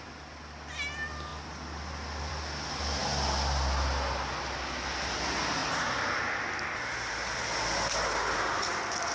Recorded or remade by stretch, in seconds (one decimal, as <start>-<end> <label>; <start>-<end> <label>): 0.0-9.1 recorded